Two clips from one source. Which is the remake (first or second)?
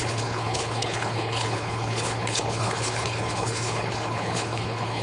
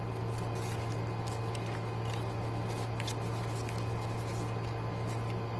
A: first